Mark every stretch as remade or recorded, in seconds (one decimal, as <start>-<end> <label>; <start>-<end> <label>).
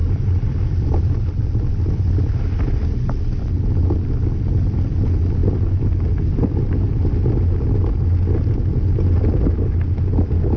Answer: 0.0-1.7 remade; 1.7-10.6 recorded